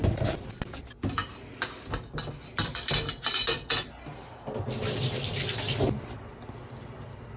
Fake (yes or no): no